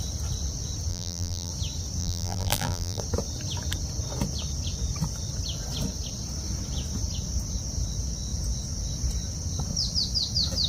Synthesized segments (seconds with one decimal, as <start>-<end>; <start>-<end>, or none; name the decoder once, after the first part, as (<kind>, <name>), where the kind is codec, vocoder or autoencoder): 0.9-1.5 (vocoder, BigVGAN v2); 2.0-3.0